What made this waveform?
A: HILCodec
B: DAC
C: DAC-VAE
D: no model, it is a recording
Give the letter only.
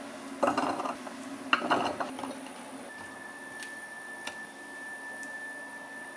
D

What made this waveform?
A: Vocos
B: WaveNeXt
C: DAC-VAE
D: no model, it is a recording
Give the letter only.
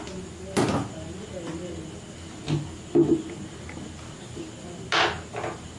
D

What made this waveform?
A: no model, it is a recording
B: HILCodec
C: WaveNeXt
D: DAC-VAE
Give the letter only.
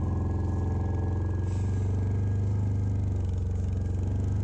A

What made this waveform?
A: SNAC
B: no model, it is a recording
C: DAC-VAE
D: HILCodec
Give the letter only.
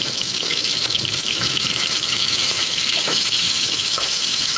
C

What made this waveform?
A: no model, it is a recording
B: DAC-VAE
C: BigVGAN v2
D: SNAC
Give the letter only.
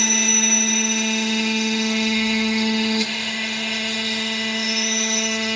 B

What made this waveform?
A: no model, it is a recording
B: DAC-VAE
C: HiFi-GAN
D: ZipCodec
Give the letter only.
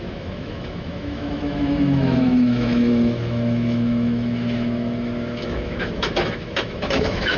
B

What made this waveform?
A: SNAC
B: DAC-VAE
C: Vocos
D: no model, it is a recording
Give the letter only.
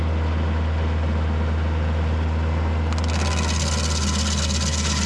D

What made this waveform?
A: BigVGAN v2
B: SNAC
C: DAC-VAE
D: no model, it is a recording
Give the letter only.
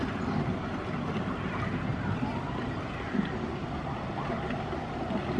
D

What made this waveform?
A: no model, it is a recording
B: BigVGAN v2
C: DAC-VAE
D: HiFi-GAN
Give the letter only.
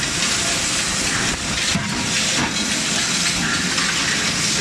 A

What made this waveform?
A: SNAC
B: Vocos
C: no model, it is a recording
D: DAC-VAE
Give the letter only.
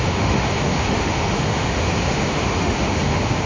D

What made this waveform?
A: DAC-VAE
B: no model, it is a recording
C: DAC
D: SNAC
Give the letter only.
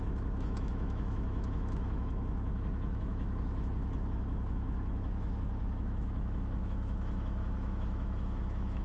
A